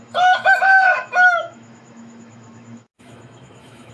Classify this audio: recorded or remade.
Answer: remade